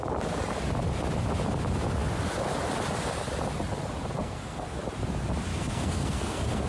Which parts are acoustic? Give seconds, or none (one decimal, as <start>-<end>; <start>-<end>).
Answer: 0.0-4.2; 4.8-5.5